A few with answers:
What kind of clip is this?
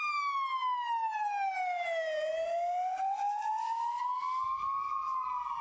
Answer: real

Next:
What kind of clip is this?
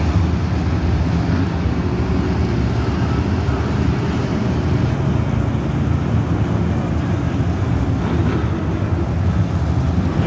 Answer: real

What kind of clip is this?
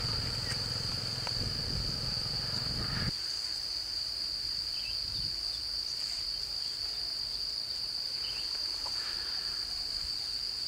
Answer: real